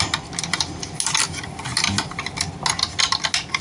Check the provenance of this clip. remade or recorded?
recorded